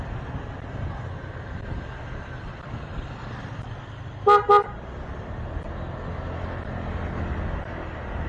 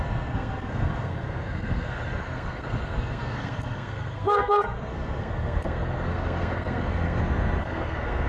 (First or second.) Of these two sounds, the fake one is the second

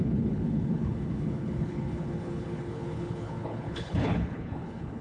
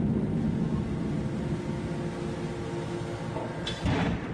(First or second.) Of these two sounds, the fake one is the first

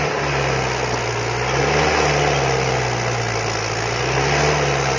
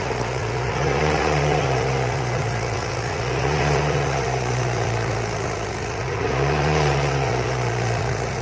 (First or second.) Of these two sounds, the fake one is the second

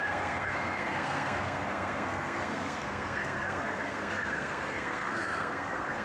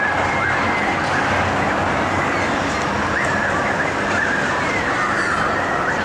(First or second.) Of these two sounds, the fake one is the first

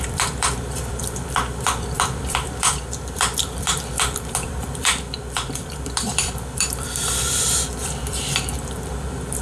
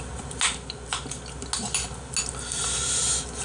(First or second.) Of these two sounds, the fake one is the first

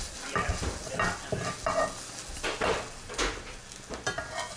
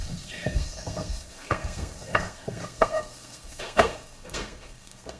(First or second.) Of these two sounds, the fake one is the second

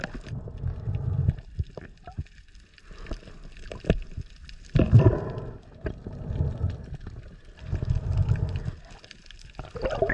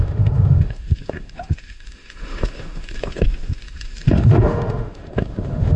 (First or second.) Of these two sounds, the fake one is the second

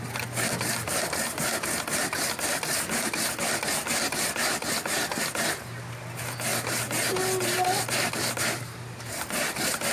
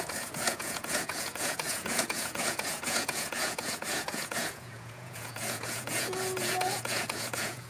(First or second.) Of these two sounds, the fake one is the second